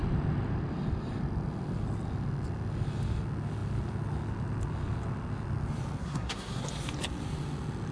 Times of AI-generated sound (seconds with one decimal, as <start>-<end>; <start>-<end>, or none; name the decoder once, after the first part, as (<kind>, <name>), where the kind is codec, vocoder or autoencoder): 6.0-6.6 (codec, SNAC)